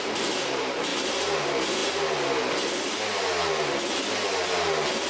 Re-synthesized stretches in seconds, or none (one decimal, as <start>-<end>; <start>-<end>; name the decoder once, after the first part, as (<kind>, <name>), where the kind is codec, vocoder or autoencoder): 0.0-0.9 (vocoder, BigVGAN v2); 1.4-1.8